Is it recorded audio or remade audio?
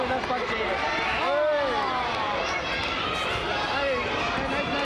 recorded